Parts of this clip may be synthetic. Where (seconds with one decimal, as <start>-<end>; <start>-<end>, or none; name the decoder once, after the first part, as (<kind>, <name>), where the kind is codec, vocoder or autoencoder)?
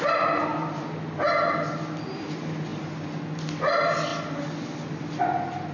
none